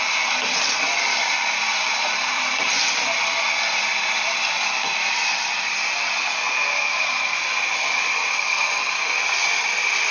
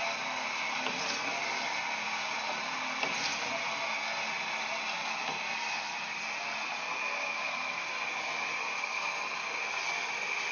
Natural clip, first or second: second